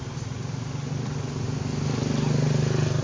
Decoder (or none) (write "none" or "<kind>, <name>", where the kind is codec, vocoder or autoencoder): none